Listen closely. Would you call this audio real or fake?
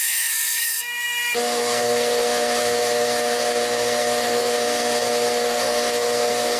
fake